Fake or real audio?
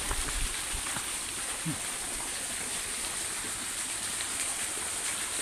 real